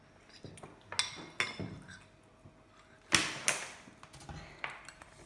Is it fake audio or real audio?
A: real